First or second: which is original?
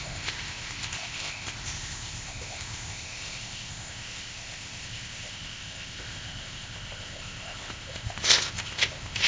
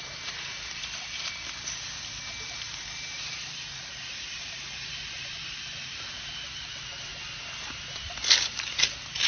second